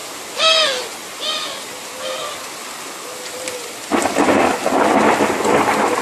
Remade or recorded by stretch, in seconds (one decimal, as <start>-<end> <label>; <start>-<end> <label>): 0.0-6.0 recorded